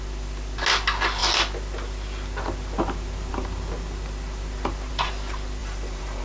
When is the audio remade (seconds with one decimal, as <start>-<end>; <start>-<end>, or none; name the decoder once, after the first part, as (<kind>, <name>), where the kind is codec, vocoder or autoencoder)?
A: 5.6-6.2 (vocoder, BigVGAN v2)